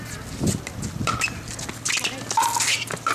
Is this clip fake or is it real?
real